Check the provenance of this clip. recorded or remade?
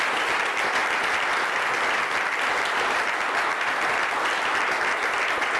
recorded